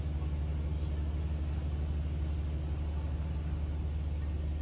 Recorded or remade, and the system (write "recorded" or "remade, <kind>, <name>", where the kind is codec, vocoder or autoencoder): recorded